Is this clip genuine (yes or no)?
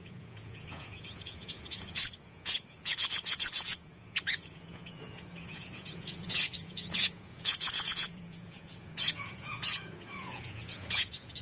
no